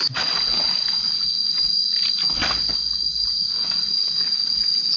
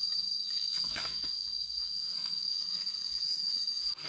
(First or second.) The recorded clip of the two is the first